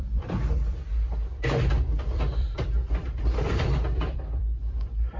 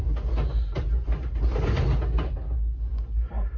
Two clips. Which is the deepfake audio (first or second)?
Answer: first